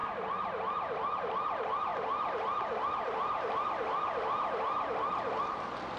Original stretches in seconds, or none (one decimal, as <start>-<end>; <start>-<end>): 0.0-6.0